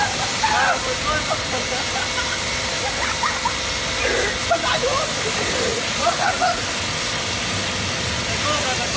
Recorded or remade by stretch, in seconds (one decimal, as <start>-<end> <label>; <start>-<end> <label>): 0.0-5.7 recorded; 5.7-6.6 remade; 6.6-9.0 recorded